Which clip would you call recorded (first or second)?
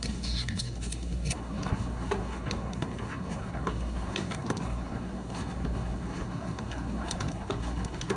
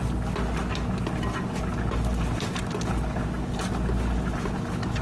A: second